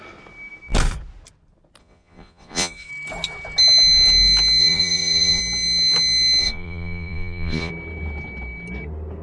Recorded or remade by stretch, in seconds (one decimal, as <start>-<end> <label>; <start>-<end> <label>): 0.0-1.8 recorded; 1.8-2.9 remade; 2.9-4.6 recorded; 4.6-5.4 remade; 5.4-6.4 recorded; 6.4-7.7 remade; 7.7-9.2 recorded